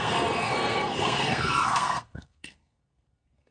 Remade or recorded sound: remade